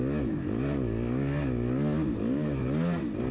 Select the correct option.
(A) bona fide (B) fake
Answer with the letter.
A